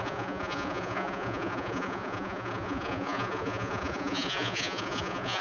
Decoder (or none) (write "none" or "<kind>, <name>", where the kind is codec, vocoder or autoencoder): vocoder, Vocos